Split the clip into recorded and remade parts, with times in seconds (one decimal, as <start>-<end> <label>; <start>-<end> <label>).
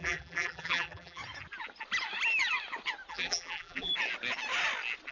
0.0-1.2 remade; 1.2-3.1 recorded; 3.1-3.9 remade; 3.9-5.1 recorded